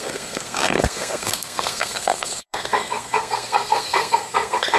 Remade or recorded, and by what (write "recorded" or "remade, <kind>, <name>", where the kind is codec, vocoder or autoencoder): remade, codec, SNAC